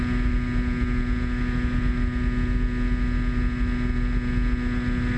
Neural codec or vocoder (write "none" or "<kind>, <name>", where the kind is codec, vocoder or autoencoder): none